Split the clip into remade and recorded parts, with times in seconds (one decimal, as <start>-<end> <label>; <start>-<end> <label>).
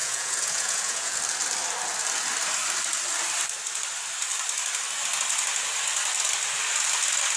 0.0-1.2 remade; 1.2-7.4 recorded